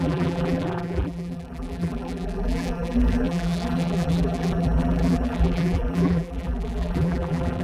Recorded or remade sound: remade